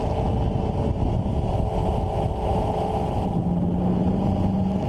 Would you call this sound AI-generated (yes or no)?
no